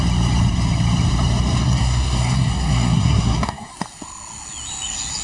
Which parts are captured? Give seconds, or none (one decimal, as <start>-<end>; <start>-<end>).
0.0-1.6; 3.7-5.2